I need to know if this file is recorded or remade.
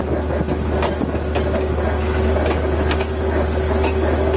recorded